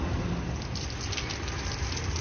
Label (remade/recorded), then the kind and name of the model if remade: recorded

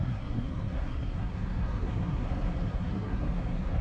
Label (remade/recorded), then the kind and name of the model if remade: remade, codec, SNAC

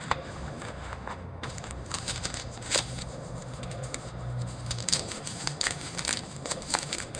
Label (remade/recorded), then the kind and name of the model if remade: remade, autoencoder, DAC-VAE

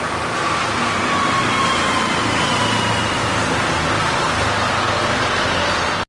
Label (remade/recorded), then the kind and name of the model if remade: recorded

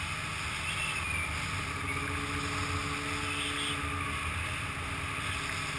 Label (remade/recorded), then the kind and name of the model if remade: recorded